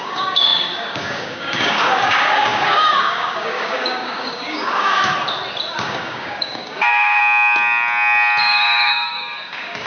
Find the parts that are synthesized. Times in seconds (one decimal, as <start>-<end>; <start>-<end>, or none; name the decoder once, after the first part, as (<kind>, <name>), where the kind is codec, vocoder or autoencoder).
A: 0.0-5.1 (codec, DAC); 5.7-7.2; 8.4-9.9